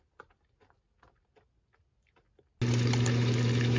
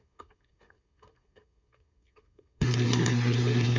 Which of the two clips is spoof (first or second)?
second